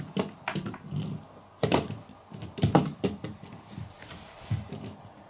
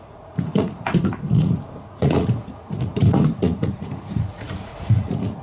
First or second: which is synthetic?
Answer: second